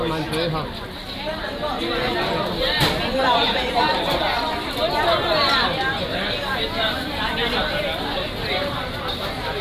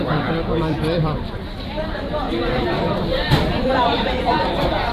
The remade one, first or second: second